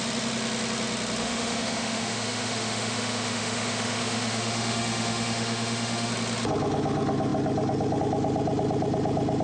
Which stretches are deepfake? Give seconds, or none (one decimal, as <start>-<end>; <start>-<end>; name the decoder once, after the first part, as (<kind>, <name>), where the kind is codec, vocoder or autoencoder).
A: 1.2-6.1 (autoencoder, DAC-VAE)